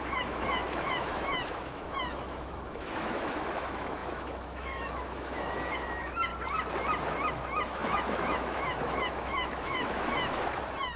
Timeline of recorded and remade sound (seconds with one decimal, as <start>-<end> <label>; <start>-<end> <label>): 0.0-6.3 remade; 6.3-7.3 recorded; 7.3-11.0 remade